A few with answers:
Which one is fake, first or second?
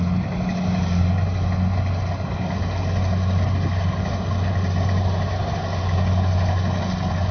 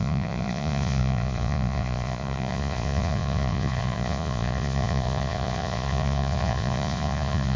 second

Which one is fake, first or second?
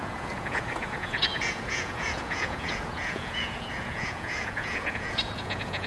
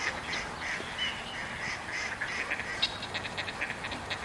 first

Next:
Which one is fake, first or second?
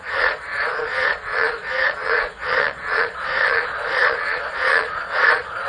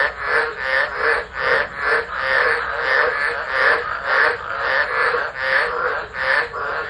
first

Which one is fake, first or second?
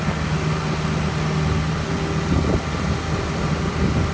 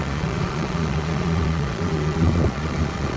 second